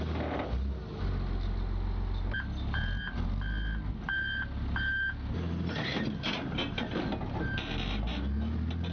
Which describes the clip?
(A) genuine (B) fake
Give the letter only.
A